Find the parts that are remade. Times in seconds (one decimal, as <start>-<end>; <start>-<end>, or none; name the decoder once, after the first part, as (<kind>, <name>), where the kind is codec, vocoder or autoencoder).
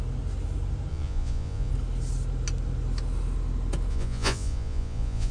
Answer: 0.9-1.7 (vocoder, Vocos); 3.9-5.3